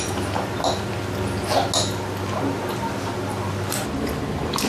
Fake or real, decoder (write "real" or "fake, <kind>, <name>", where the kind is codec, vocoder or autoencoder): real